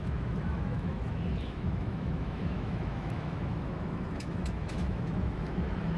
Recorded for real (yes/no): no